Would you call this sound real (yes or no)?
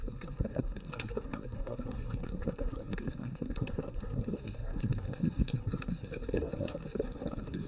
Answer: no